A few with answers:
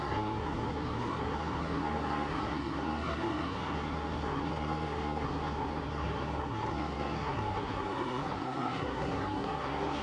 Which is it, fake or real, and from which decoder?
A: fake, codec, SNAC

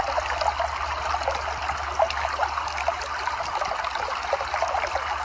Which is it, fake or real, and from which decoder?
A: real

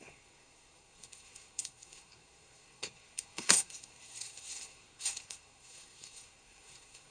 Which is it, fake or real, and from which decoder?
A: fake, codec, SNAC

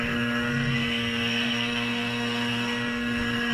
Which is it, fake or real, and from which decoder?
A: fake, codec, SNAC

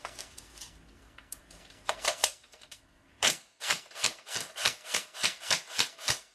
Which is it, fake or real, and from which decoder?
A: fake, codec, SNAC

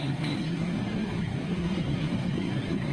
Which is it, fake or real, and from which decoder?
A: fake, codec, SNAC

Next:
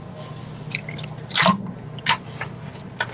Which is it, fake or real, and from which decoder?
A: real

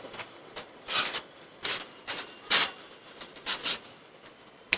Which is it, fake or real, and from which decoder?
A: real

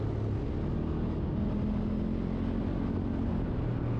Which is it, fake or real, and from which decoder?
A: real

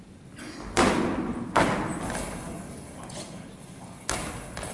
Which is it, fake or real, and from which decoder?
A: real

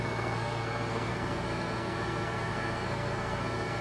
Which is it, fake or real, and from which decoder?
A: fake, codec, SNAC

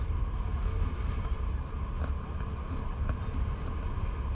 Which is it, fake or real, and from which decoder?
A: real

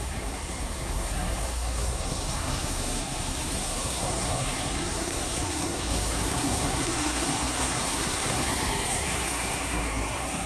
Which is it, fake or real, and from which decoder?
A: fake, codec, SNAC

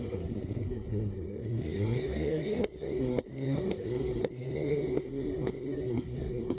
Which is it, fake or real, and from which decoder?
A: fake, codec, SNAC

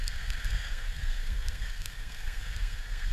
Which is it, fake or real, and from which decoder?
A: fake, codec, SNAC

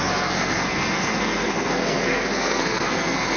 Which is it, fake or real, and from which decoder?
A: fake, codec, SNAC